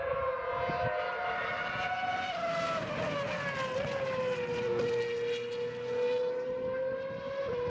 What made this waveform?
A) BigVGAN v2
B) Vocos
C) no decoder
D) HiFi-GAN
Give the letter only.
C